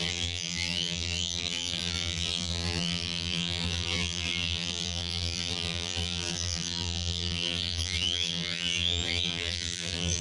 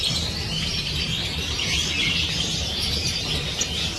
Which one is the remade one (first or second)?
first